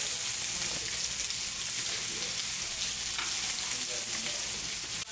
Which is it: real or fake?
real